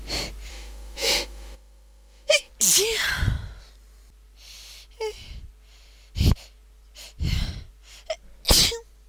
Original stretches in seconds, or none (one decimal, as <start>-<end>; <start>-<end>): 0.0-0.5; 2.5-9.1